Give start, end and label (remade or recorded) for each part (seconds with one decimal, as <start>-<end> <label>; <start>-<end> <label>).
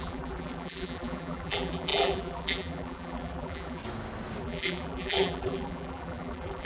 0.0-3.8 remade; 3.8-4.4 recorded; 4.4-6.7 remade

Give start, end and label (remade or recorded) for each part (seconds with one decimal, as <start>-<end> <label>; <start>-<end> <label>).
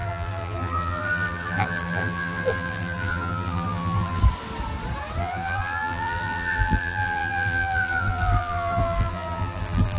0.0-4.2 remade; 4.2-5.2 recorded; 5.2-10.0 remade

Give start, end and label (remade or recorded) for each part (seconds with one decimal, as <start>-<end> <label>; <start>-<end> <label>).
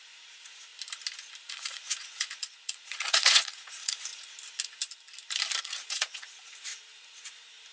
0.0-0.7 remade; 0.7-1.4 recorded; 1.4-4.1 remade; 4.1-5.6 recorded; 5.6-6.7 remade; 6.7-7.7 recorded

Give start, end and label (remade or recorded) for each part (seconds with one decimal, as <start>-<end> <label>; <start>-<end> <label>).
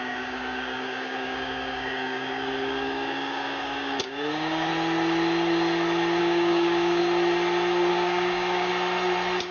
0.0-4.7 remade; 4.7-6.2 recorded; 6.2-7.0 remade; 7.0-7.9 recorded; 7.9-8.7 remade; 8.7-9.5 recorded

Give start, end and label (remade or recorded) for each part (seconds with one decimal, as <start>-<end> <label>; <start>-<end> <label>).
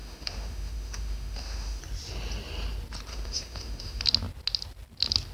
0.0-1.8 remade; 1.8-3.1 recorded; 3.1-4.0 remade; 4.0-5.3 recorded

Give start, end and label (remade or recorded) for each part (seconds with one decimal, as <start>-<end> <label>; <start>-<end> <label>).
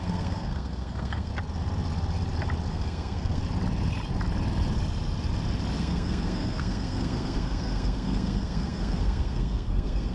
0.0-1.3 remade; 1.3-2.7 recorded; 2.7-3.4 remade; 3.4-5.8 recorded; 5.8-10.1 remade